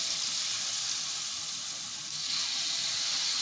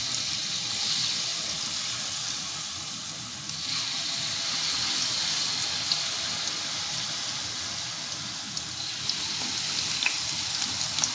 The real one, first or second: second